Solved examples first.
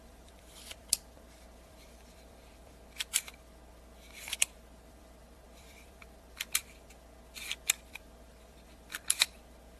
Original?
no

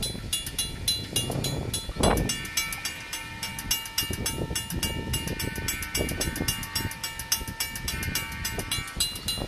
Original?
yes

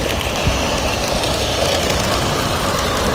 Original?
yes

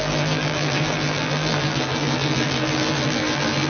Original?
no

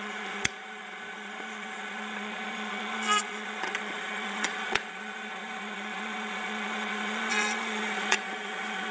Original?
no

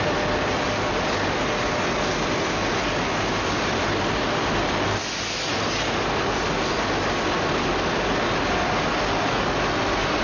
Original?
yes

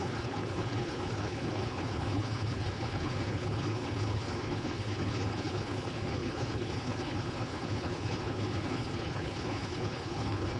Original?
no